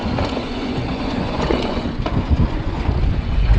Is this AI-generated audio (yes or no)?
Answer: yes